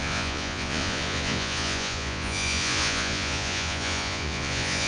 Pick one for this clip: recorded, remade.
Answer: remade